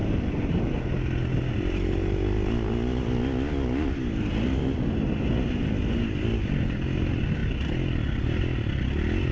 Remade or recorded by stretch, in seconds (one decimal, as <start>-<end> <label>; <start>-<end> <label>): 0.0-9.3 recorded